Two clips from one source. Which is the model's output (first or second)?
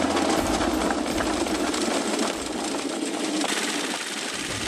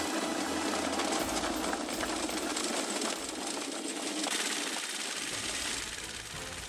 first